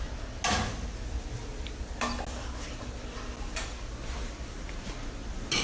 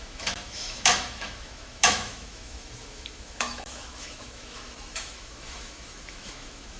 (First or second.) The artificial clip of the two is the second